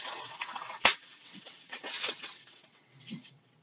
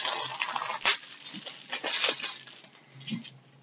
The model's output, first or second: first